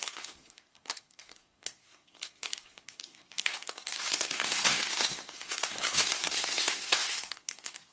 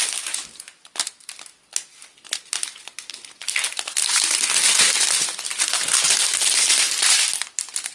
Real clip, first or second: second